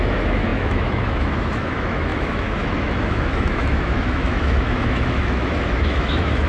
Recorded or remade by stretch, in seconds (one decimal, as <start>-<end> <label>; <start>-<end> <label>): 0.0-6.5 remade

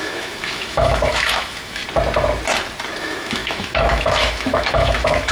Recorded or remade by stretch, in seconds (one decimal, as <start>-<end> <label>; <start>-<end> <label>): 0.0-1.8 remade; 1.8-3.0 recorded; 3.0-5.3 remade

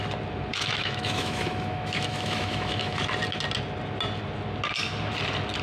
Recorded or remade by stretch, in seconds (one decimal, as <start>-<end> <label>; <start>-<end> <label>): 0.0-0.5 recorded; 0.5-3.0 remade; 3.0-5.6 recorded

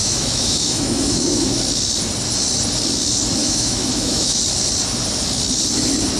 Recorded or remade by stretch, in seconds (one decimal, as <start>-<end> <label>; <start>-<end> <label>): 0.0-1.6 remade; 1.6-3.4 recorded; 3.4-4.4 remade; 4.4-6.2 recorded

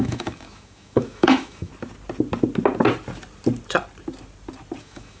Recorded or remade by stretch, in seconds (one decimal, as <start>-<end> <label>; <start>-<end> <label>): 0.0-1.7 remade; 1.7-4.8 recorded; 4.8-5.2 remade

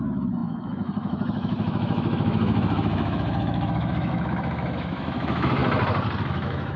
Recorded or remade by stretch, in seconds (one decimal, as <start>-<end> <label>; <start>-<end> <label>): 0.0-5.6 remade; 5.6-6.2 recorded; 6.2-6.8 remade

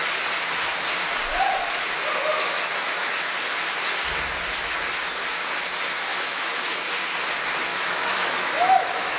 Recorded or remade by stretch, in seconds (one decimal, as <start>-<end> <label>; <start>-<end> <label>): 0.0-6.1 recorded; 6.1-6.9 remade; 6.9-7.7 recorded; 7.7-9.2 remade

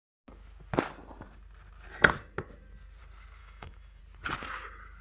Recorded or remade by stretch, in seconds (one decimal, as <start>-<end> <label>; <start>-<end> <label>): 0.0-3.4 recorded; 3.4-4.0 remade; 4.0-5.0 recorded